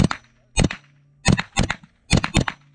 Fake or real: real